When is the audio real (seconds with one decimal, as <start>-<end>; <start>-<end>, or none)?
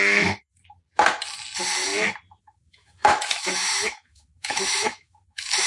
0.6-2.4